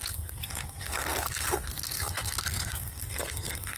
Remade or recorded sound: remade